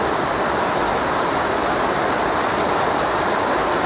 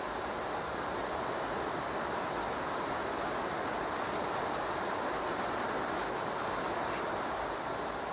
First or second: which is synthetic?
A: first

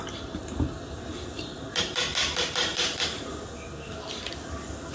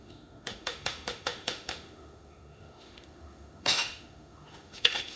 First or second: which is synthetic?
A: second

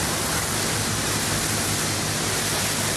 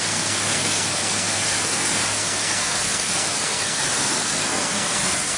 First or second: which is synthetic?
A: second